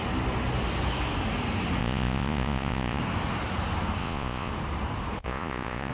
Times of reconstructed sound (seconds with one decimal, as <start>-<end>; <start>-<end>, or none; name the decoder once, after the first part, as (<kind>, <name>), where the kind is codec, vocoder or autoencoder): 1.8-3.0 (vocoder, Vocos); 4.0-4.5; 5.2-5.9